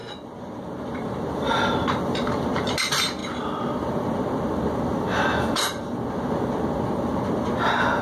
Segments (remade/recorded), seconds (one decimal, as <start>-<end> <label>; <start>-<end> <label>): 0.0-8.0 recorded